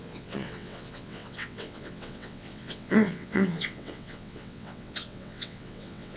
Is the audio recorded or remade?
remade